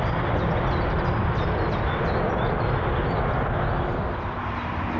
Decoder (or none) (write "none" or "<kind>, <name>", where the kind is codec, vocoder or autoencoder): none